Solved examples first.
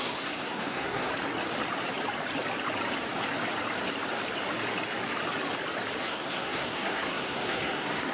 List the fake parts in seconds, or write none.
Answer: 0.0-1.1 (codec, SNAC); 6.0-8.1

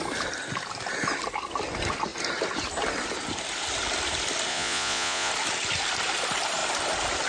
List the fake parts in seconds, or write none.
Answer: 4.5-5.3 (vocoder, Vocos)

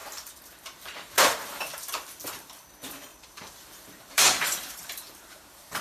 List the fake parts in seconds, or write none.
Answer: 0.0-1.4 (vocoder, BigVGAN v2); 3.1-5.8